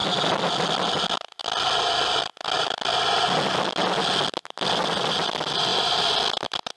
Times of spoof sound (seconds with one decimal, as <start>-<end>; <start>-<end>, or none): none